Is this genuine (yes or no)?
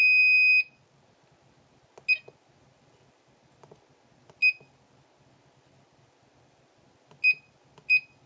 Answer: yes